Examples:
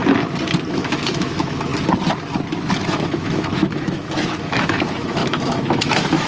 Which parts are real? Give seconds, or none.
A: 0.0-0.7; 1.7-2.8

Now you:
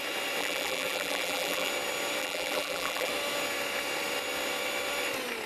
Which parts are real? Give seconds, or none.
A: 0.0-0.4; 1.7-2.2; 3.1-5.5

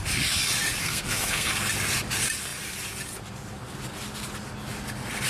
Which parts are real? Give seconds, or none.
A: 0.0-0.8; 1.5-5.3

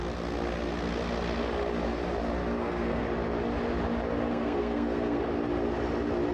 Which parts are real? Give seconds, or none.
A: 0.0-2.4; 3.0-4.3; 5.2-6.3

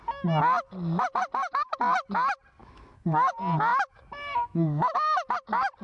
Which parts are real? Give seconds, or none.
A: 0.0-2.6; 3.3-3.7; 5.3-5.8

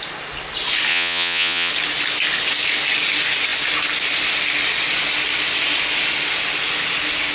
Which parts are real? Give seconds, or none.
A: 0.0-0.9; 1.7-7.3

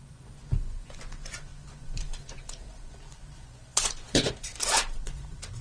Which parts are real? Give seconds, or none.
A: none

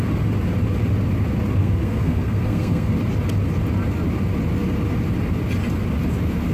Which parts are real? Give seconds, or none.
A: 0.0-1.6; 2.9-6.5